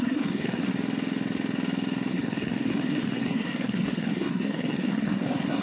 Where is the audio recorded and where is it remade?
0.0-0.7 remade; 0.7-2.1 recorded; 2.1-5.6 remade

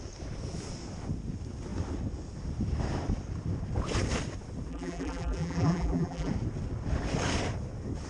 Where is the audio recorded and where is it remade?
0.0-4.7 recorded; 4.7-6.3 remade; 6.3-8.1 recorded

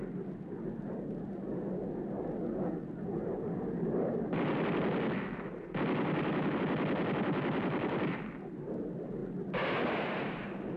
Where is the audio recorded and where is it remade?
0.0-10.8 recorded

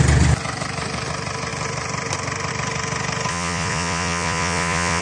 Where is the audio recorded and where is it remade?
0.0-3.3 recorded; 3.3-5.0 remade

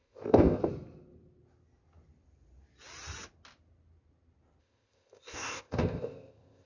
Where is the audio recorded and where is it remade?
0.0-0.6 remade; 0.6-4.6 recorded; 4.6-6.7 remade

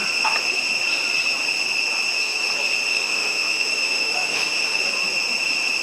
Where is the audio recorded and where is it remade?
0.0-2.9 recorded; 2.9-4.8 remade; 4.8-5.8 recorded